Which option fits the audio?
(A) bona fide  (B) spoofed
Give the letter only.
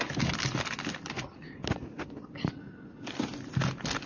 A